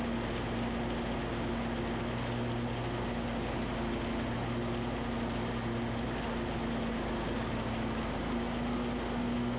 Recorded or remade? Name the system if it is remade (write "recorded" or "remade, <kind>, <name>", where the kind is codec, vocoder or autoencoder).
recorded